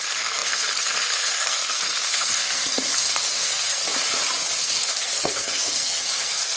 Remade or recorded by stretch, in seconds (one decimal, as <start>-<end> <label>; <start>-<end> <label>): 0.0-3.8 remade; 3.8-4.6 recorded; 4.6-6.6 remade